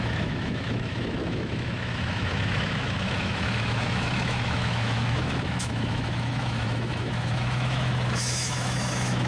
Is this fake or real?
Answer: fake